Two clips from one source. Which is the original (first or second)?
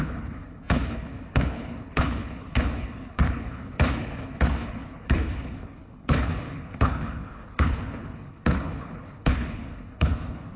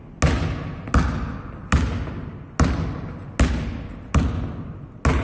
second